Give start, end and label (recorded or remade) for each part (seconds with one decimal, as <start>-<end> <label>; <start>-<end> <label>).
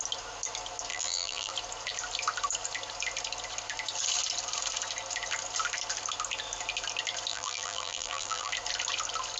0.0-0.9 recorded; 0.9-1.5 remade; 1.5-7.3 recorded; 7.3-8.5 remade; 8.5-9.4 recorded